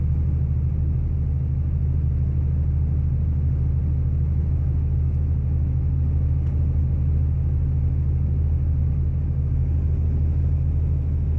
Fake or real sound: real